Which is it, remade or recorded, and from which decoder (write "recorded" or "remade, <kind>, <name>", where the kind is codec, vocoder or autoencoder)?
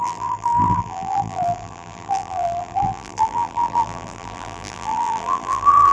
remade, vocoder, BigVGAN v2